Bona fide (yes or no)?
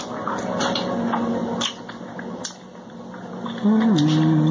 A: yes